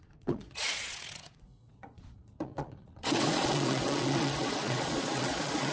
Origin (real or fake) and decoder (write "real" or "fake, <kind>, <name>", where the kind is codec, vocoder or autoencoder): fake, vocoder, Vocos